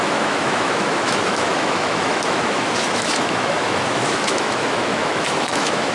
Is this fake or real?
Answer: fake